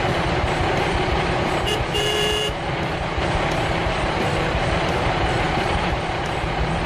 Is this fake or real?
fake